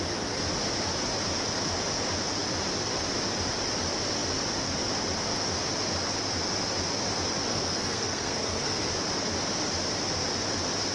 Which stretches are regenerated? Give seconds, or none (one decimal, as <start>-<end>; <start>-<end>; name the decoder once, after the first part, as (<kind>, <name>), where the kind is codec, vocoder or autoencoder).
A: 7.5-8.9 (codec, SNAC)